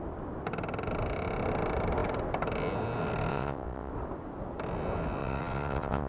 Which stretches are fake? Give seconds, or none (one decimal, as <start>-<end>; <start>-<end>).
3.3-3.9; 5.2-6.1